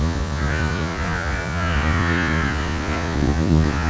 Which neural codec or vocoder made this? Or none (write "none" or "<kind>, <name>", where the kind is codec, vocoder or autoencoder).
vocoder, Vocos